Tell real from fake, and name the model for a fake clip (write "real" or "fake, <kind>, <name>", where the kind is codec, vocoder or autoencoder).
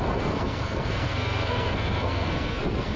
fake, codec, SNAC